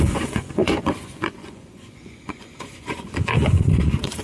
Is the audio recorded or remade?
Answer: remade